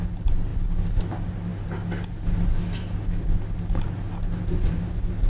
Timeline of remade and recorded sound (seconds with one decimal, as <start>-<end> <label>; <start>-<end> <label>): 0.0-5.3 recorded